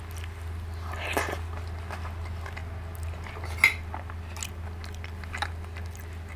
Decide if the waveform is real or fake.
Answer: real